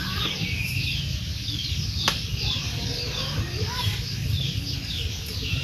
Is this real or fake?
fake